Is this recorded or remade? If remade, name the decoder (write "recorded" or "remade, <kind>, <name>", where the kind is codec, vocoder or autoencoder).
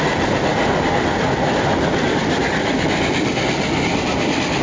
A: recorded